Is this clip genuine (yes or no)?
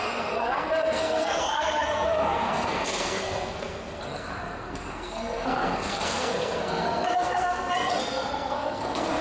no